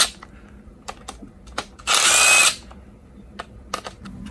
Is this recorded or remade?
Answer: recorded